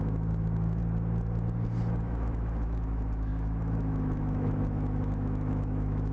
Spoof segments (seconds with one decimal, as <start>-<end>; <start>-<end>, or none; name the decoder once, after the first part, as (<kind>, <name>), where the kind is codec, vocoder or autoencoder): 0.0-0.8 (autoencoder, DAC-VAE); 2.0-6.1

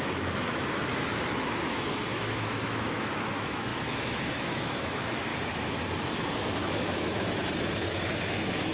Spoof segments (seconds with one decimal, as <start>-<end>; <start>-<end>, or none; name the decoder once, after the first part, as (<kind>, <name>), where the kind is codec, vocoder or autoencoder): 0.0-5.3 (autoencoder, DAC-VAE); 6.1-8.7

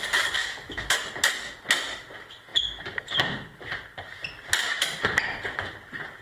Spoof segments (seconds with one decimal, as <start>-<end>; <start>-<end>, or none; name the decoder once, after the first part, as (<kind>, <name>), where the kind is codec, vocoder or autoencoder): 0.4-1.0 (autoencoder, DAC-VAE)

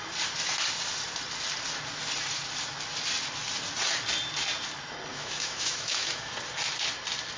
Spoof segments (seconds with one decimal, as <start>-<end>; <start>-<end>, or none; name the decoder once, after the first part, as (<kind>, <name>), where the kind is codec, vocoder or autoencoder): 5.1-6.3 (autoencoder, DAC-VAE)

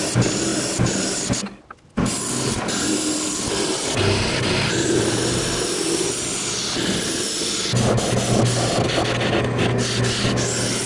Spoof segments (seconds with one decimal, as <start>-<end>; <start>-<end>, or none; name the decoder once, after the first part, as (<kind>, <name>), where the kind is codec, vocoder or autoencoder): none